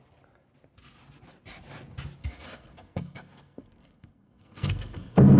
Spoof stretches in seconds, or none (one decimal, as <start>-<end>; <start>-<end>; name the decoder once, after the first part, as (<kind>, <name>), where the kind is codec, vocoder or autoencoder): 2.2-5.4 (codec, SNAC)